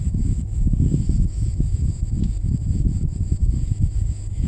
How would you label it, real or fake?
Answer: fake